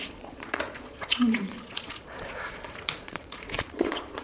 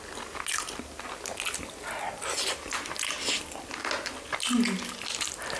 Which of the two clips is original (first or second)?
second